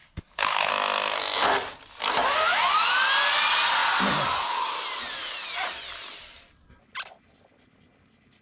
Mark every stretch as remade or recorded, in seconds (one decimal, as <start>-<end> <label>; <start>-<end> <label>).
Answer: 0.0-0.7 remade; 0.7-8.4 recorded